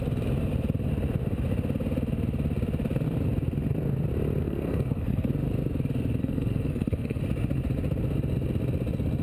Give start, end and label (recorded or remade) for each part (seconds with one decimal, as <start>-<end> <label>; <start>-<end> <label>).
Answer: 0.0-4.4 recorded; 4.4-5.3 remade; 5.3-6.2 recorded; 6.2-7.2 remade; 7.2-9.2 recorded